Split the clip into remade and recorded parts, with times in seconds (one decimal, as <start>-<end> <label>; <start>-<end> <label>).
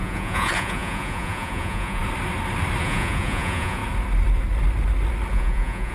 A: 0.0-2.0 remade; 2.0-2.8 recorded; 2.8-3.8 remade; 3.8-5.3 recorded; 5.3-5.9 remade